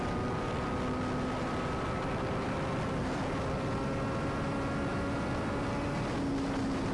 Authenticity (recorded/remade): recorded